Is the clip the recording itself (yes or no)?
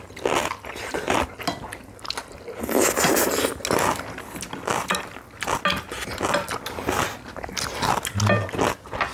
yes